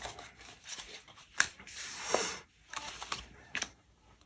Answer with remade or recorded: remade